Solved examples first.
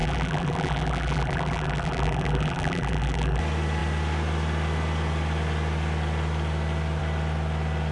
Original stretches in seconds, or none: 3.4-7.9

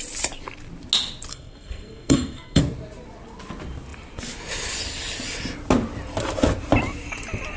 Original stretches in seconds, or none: 0.0-1.3; 2.6-7.6

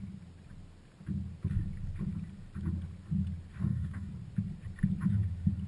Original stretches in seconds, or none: 0.0-3.5; 4.1-5.7

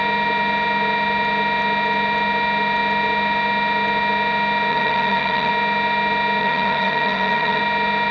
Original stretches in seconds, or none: 0.0-4.7; 5.5-6.4; 7.6-8.1

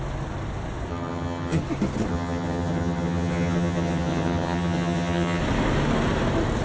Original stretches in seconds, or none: 0.0-0.9; 1.6-2.1; 5.4-6.6